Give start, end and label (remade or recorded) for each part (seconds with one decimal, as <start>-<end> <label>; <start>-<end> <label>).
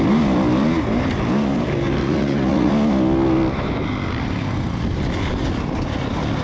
0.0-2.0 recorded; 2.0-2.7 remade; 2.7-6.4 recorded